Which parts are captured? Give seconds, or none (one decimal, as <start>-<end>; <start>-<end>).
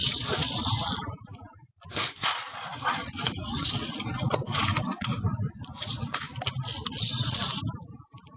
0.6-2.0; 6.3-8.4